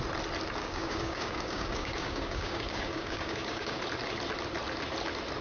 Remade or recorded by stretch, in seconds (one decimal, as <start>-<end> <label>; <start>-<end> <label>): 0.0-0.6 recorded; 0.6-3.8 remade; 3.8-5.4 recorded